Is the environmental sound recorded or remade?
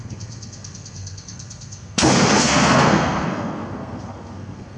remade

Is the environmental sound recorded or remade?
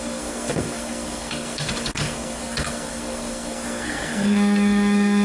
remade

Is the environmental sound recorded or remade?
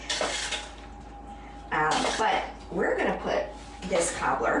recorded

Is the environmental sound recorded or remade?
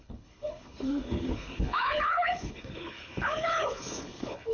remade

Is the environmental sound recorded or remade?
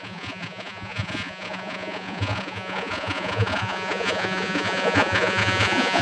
remade